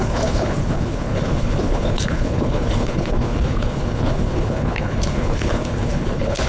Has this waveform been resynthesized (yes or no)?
yes